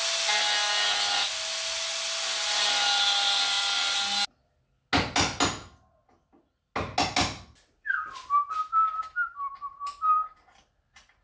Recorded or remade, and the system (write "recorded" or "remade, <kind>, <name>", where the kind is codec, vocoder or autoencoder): recorded